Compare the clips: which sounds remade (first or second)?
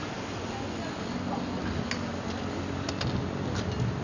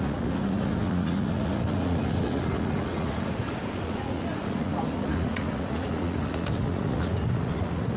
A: second